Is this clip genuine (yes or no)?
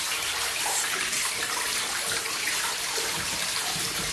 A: no